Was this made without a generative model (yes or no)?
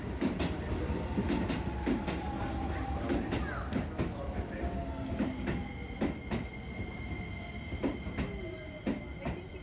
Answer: yes